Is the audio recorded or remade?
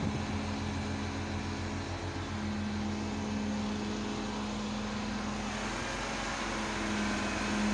recorded